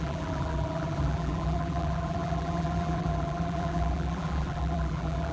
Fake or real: fake